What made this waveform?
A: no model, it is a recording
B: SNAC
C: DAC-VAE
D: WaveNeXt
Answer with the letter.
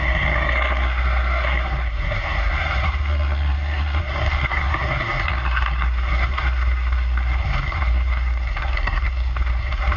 B